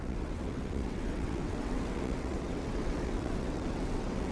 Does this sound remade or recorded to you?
remade